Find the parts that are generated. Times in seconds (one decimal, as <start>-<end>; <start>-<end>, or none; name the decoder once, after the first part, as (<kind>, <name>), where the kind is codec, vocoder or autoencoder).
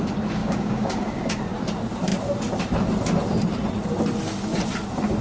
0.4-1.4 (codec, DAC)